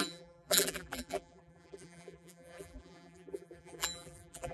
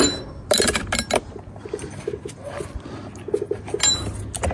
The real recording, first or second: second